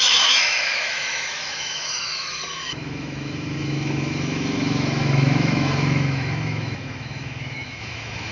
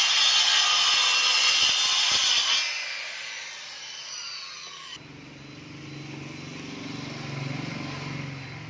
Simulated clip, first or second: first